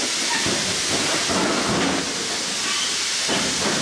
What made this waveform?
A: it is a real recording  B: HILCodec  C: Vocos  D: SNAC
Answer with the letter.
A